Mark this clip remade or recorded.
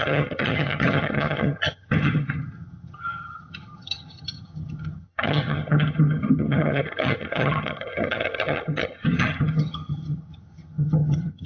remade